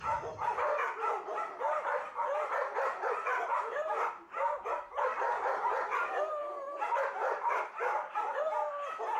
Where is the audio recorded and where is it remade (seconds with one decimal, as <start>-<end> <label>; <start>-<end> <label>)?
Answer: 0.0-3.5 recorded; 3.5-4.8 remade; 4.8-6.4 recorded; 6.4-8.7 remade; 8.7-9.2 recorded